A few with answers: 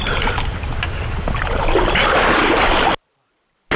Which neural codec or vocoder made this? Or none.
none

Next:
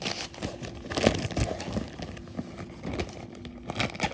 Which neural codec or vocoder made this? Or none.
none